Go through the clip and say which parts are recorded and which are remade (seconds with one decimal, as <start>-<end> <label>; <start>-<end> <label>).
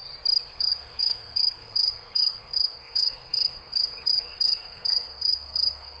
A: 0.0-0.5 recorded; 0.5-6.0 remade